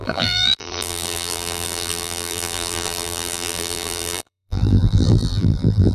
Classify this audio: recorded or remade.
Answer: remade